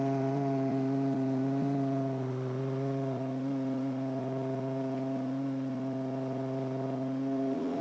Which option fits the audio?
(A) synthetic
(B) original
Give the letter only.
A